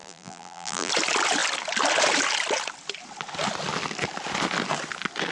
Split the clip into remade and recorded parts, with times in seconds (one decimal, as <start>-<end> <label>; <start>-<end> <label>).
0.0-0.9 remade; 0.9-5.3 recorded